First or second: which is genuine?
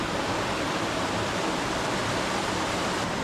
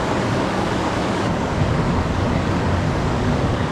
first